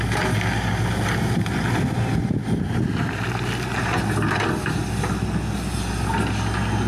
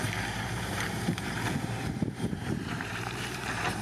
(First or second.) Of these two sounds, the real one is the first